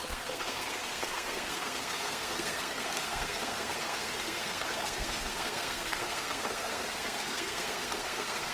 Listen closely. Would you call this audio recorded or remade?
remade